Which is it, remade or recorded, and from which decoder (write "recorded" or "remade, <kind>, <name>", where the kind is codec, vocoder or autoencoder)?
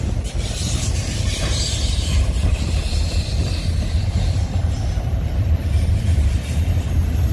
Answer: remade, vocoder, BigVGAN v2